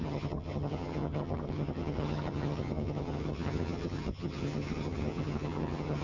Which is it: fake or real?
fake